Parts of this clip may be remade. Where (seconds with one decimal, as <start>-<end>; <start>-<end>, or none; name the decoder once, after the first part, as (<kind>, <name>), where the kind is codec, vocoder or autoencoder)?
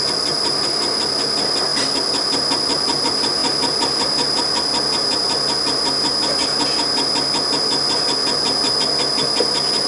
none